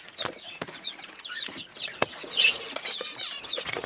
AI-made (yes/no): yes